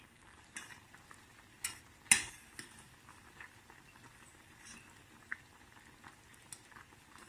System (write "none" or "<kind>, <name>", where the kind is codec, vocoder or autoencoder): none